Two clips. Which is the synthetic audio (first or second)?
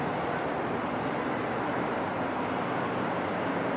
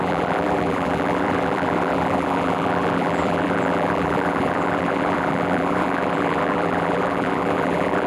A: second